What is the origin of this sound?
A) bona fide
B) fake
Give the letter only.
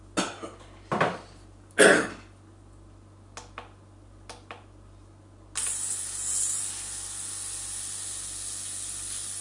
A